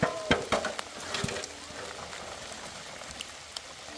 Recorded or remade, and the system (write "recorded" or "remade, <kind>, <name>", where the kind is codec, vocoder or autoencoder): recorded